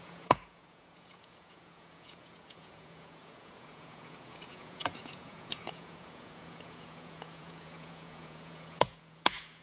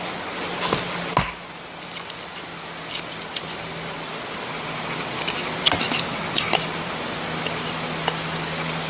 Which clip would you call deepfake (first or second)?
first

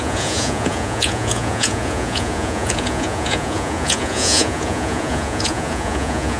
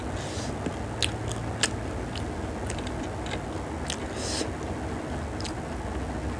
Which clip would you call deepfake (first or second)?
first